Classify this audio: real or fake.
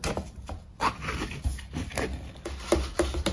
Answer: real